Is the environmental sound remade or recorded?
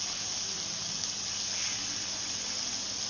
recorded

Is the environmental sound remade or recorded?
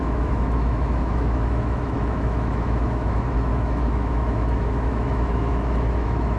remade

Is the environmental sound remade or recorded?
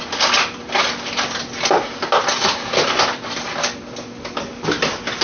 recorded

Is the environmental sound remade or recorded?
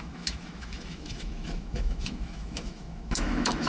remade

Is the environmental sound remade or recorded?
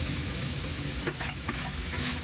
remade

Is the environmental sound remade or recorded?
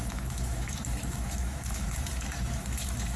remade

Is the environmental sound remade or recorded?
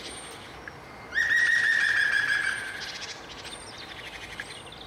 recorded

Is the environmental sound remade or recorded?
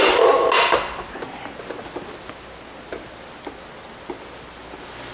recorded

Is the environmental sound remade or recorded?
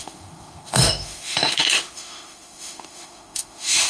remade